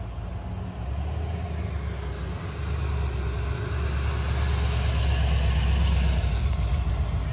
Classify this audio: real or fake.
real